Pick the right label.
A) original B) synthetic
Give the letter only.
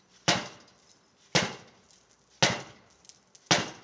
A